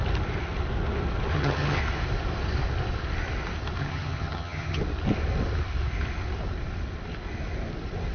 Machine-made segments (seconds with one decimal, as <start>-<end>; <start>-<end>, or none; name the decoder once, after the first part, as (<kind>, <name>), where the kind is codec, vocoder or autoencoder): 1.3-1.8 (vocoder, HiFi-GAN); 3.8-4.8